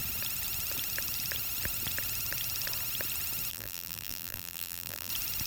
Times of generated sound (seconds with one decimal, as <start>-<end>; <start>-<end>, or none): 3.5-5.1